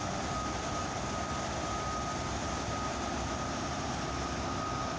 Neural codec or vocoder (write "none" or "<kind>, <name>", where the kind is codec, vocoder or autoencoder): none